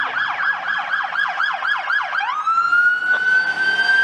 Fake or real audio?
real